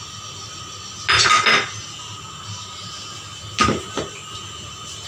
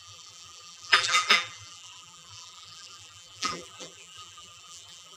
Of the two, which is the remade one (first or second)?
second